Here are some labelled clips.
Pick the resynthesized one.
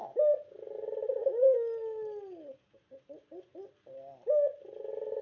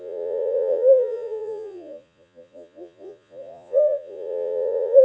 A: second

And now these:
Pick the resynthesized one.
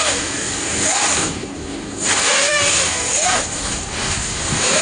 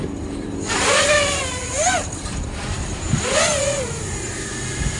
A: first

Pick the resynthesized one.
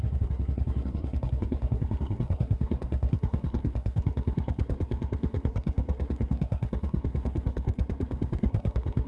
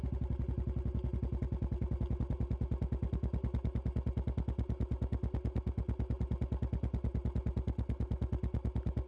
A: first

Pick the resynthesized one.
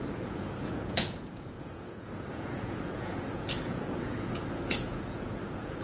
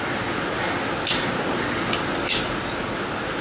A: first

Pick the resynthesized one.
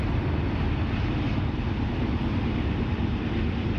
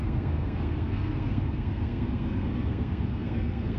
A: second